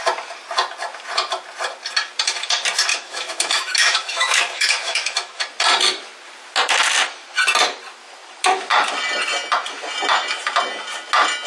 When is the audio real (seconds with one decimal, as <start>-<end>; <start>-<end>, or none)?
0.0-2.9; 5.4-11.5